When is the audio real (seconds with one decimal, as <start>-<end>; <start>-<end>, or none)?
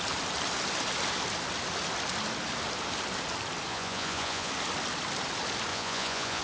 0.0-3.7; 4.5-5.7